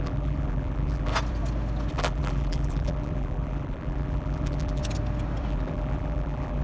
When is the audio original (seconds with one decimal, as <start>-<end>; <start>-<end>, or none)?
1.1-1.9; 4.8-5.5